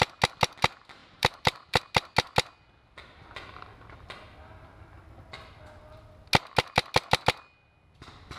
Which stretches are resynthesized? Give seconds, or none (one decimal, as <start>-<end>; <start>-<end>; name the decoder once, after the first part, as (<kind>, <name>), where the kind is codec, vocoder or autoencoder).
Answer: 1.0-1.8 (vocoder, BigVGAN v2)